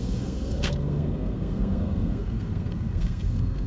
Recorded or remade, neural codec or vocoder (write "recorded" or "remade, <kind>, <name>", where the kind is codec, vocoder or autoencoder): remade, codec, SNAC